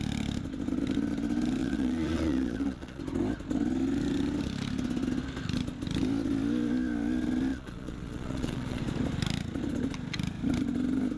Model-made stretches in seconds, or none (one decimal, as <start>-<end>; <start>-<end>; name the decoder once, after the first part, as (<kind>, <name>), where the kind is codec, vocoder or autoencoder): 1.6-3.0 (vocoder, Vocos); 7.5-8.8